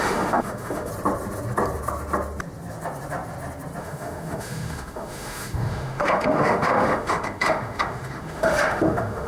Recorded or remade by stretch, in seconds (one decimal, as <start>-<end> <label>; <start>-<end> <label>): 0.0-0.9 remade; 0.9-3.8 recorded; 3.8-9.3 remade